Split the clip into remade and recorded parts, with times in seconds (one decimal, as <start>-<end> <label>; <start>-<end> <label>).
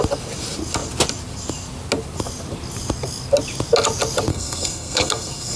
0.0-4.3 recorded; 4.3-5.6 remade